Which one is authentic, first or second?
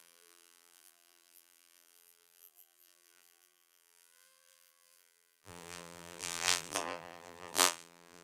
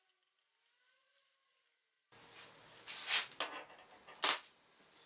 second